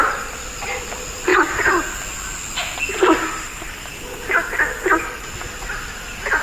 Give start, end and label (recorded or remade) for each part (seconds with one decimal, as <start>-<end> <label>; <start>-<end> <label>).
0.0-6.4 recorded